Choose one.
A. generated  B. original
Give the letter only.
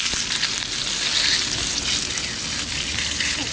B